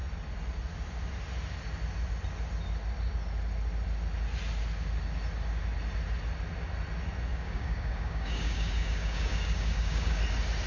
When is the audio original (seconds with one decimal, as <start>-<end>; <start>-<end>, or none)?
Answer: 0.0-7.3; 10.2-10.7